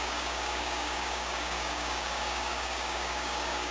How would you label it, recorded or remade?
remade